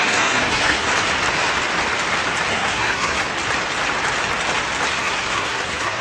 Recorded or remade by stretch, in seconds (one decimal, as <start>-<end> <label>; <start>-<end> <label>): 0.0-0.9 remade; 0.9-2.5 recorded; 2.5-3.3 remade; 3.3-5.0 recorded; 5.0-6.0 remade